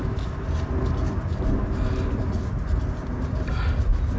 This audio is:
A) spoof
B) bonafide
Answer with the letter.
B